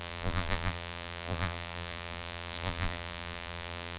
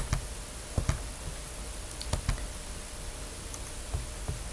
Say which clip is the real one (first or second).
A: second